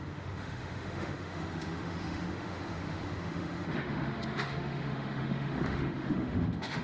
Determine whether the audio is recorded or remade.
remade